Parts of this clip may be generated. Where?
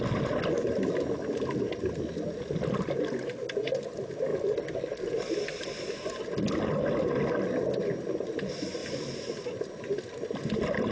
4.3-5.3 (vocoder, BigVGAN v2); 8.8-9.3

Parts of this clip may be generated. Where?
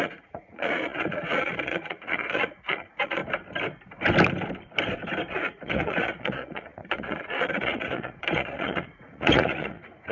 0.0-3.2 (vocoder, Vocos); 5.3-10.1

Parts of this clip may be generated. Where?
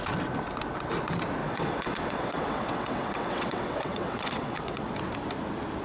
1.4-4.9 (vocoder, WaveNeXt)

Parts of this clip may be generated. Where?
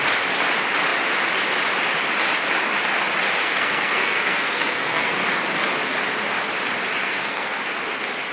3.4-5.2 (codec, SNAC); 7.0-7.6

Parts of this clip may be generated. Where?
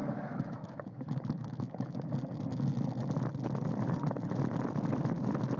0.0-2.1 (autoencoder, DAC-VAE)